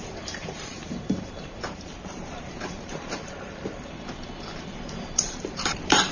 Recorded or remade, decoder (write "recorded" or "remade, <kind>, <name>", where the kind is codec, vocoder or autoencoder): remade, vocoder, BigVGAN v2